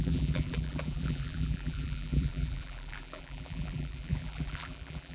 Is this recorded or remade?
remade